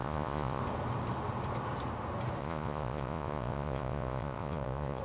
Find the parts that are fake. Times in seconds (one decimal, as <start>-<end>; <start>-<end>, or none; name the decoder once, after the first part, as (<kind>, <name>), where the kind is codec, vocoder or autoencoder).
0.0-0.6 (vocoder, Vocos); 2.4-5.0